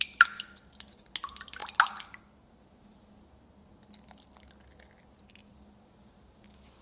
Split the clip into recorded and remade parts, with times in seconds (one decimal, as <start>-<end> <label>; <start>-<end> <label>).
0.0-6.8 recorded